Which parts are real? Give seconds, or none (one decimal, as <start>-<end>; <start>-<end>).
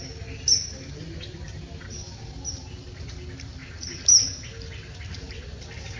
0.0-6.0